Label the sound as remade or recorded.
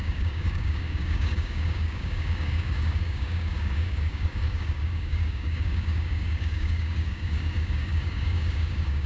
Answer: remade